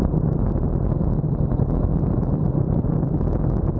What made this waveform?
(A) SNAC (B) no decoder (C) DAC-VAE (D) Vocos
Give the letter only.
B